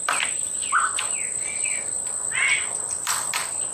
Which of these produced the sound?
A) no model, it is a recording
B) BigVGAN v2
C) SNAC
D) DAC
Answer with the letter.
A